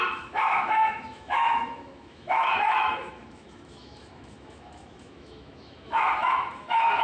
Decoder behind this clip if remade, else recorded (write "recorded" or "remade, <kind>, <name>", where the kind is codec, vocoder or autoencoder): remade, autoencoder, DAC-VAE